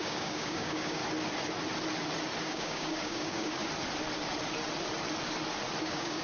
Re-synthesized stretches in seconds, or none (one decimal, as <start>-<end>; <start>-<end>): 0.0-1.0; 2.4-3.6; 5.8-6.2